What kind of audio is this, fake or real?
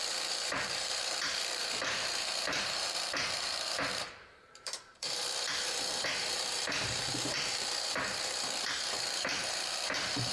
fake